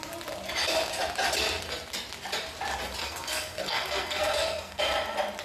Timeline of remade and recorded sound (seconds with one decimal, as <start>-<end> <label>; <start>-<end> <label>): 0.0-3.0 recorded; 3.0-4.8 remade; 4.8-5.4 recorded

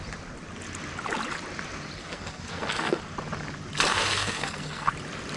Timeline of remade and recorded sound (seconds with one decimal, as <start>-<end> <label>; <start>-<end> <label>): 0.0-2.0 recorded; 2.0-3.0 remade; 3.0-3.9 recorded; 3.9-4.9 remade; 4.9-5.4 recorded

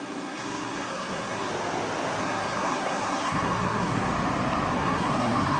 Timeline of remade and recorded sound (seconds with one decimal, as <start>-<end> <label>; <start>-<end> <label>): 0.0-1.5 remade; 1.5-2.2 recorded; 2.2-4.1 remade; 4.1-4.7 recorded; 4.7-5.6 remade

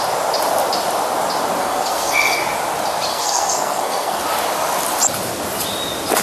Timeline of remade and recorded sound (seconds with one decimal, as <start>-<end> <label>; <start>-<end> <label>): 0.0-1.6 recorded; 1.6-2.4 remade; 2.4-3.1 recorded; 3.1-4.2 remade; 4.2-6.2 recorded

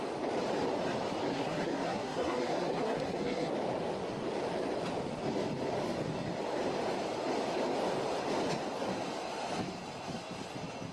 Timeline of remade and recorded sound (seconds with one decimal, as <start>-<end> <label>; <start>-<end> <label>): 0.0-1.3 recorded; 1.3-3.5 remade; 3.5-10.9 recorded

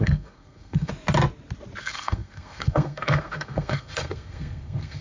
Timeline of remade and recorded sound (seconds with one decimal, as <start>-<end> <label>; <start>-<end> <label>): 0.0-0.9 remade; 0.9-1.8 recorded; 1.8-5.0 remade

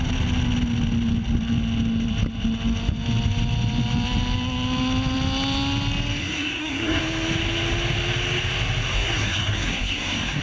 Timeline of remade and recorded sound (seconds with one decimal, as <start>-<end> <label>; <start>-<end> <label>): 0.0-6.2 recorded; 6.2-7.0 remade; 7.0-8.9 recorded; 8.9-10.4 remade

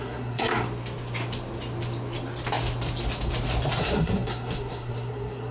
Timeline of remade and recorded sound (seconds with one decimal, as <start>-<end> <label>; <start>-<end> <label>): 0.0-0.5 remade; 0.5-3.8 recorded; 3.8-5.5 remade